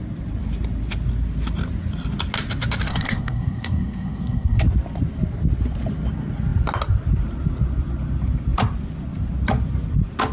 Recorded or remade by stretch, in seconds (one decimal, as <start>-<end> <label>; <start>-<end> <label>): 0.0-2.9 recorded; 2.9-4.6 remade; 4.6-10.3 recorded